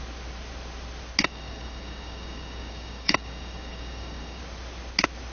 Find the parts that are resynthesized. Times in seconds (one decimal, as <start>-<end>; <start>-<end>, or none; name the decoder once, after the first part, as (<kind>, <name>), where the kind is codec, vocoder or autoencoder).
1.2-4.4 (codec, DAC)